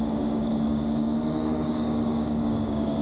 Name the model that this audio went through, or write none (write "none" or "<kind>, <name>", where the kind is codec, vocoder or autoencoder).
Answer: codec, DAC